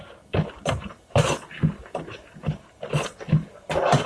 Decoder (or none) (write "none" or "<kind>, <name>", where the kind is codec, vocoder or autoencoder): none